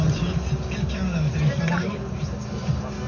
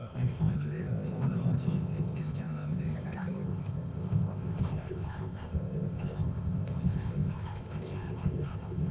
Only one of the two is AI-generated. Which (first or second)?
second